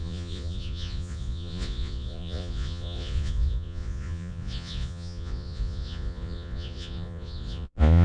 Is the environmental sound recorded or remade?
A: remade